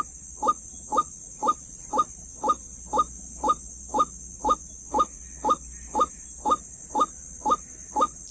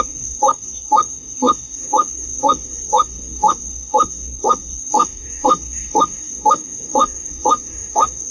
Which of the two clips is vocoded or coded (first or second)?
second